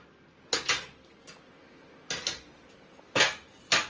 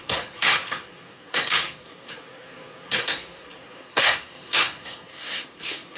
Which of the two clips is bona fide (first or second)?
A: first